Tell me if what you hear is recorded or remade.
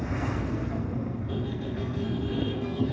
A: remade